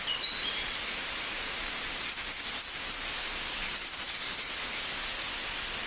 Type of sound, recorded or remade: recorded